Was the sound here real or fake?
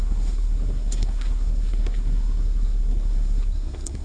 fake